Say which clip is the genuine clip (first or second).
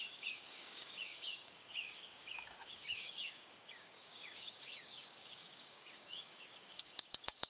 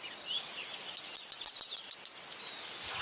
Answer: second